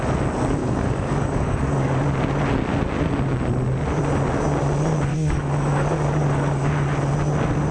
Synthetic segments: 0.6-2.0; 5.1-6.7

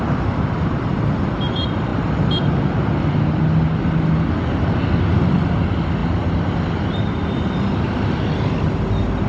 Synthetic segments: none

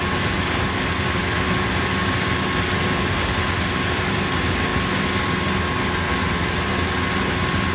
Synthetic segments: none

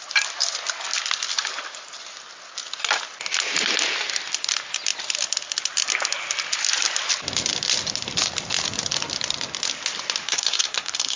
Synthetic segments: 10.2-11.2

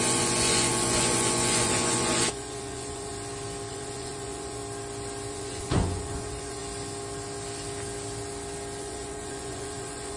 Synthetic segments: 0.0-3.1; 3.7-4.6; 5.3-6.6; 8.8-10.2

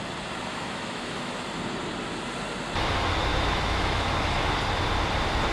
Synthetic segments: 0.5-1.3; 3.3-4.6

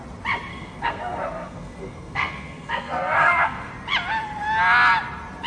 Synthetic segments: 0.5-3.7